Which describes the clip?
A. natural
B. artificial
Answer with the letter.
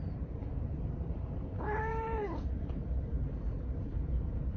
B